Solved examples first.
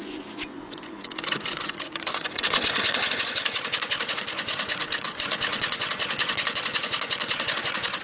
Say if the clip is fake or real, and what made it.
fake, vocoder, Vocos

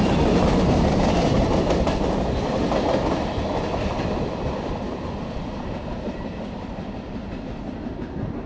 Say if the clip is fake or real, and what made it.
real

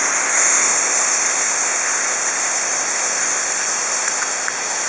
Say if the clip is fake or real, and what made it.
fake, codec, ZipCodec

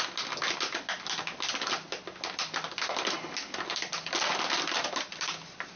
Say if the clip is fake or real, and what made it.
real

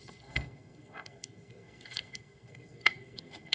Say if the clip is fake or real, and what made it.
fake, codec, SNAC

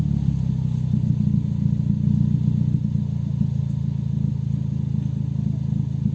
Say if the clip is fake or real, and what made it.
real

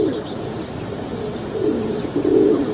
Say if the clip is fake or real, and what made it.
real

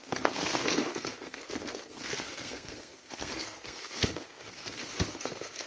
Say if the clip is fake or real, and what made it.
fake, codec, SNAC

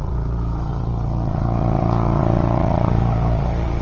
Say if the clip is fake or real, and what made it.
fake, vocoder, Vocos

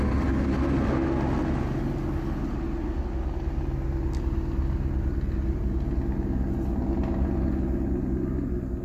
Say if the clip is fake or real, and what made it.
real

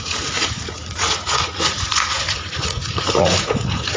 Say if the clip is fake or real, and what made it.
fake, vocoder, Vocos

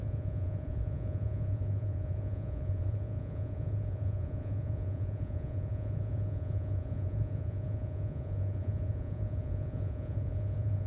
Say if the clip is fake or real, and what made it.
fake, vocoder, Vocos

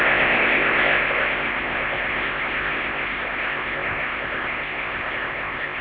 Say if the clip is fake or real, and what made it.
fake, codec, ZipCodec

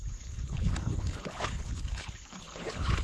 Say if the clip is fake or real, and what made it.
fake, codec, HILCodec